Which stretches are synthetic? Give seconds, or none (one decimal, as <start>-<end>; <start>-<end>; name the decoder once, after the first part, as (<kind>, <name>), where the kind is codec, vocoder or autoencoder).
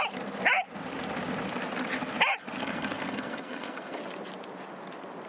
2.6-4.0 (codec, SNAC)